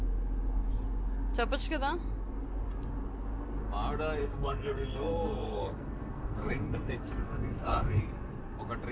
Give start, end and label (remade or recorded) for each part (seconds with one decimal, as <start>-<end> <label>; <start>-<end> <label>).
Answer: 0.0-4.2 recorded; 4.2-8.0 remade; 8.0-8.9 recorded